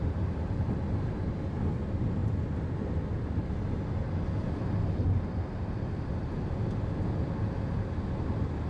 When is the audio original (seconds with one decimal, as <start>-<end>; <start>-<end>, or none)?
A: 0.0-8.7